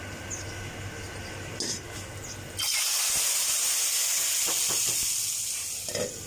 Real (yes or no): yes